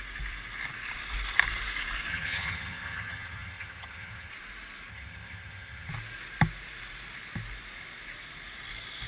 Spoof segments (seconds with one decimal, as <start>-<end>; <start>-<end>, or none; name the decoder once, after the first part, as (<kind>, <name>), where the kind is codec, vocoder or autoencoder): 2.1-4.3 (vocoder, HiFi-GAN); 4.9-5.9